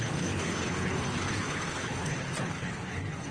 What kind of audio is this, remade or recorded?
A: remade